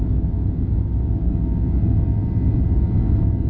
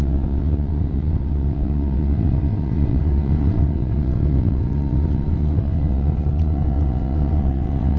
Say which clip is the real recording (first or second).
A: first